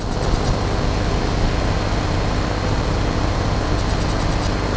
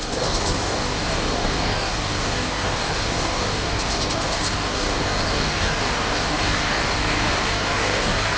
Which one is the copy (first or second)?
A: second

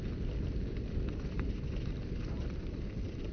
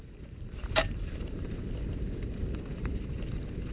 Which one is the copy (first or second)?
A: second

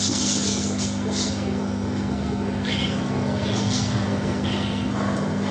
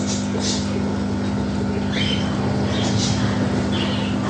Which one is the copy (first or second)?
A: first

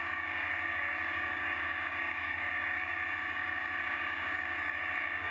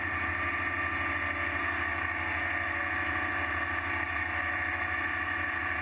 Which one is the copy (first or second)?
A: first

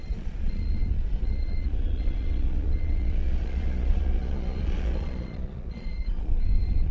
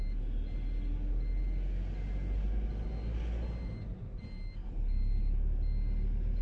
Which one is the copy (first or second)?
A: first